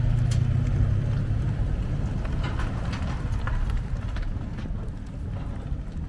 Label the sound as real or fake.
real